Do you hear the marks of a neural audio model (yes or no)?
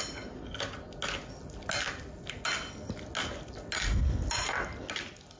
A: no